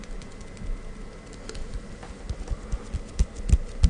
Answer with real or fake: real